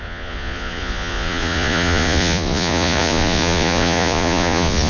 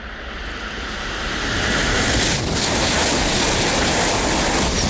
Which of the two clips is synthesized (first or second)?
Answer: first